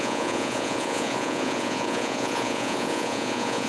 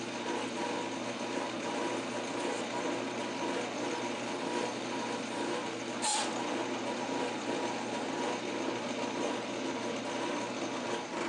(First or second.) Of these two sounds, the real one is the second